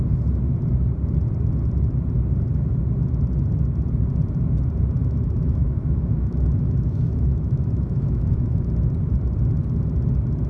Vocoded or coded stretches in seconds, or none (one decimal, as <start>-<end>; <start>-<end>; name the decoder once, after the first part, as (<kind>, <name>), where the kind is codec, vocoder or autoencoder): 5.0-8.7 (autoencoder, DAC-VAE)

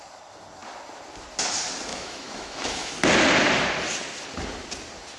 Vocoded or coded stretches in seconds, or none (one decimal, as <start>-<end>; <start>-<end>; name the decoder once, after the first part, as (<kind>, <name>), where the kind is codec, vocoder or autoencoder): 1.9-2.9 (autoencoder, DAC-VAE)

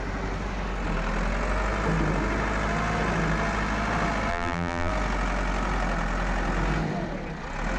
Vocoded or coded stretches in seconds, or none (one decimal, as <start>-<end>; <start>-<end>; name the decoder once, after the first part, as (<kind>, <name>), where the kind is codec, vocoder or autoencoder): 4.3-4.9 (vocoder, BigVGAN v2)

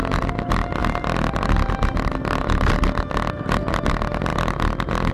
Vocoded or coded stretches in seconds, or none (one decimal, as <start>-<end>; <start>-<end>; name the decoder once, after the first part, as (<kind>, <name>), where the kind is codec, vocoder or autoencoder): none

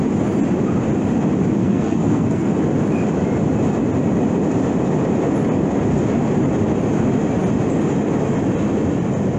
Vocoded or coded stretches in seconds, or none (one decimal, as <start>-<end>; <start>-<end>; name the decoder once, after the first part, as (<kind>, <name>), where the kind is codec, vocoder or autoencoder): 1.6-2.5 (codec, SNAC)

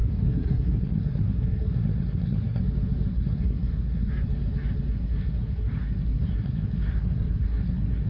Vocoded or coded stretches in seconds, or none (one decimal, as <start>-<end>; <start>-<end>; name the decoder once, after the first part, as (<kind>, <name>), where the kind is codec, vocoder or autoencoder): 0.0-2.6 (codec, SNAC); 3.1-4.1; 4.9-8.1

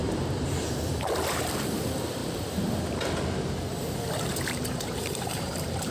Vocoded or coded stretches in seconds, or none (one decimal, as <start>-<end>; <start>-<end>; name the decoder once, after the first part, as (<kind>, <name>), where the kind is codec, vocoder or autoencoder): 0.0-2.2 (vocoder, BigVGAN v2); 4.2-5.9